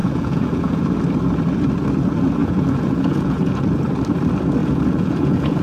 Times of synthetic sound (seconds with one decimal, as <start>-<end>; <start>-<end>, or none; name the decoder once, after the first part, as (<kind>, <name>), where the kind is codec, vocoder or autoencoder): 0.0-0.8 (vocoder, Vocos); 2.4-3.6; 4.6-5.6